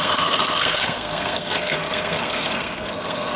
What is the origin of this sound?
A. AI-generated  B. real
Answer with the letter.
A